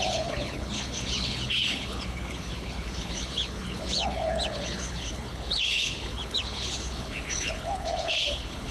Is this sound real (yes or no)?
no